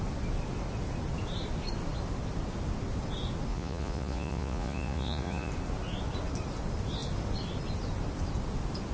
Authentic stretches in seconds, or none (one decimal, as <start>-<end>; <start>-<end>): 0.0-3.5; 5.5-8.9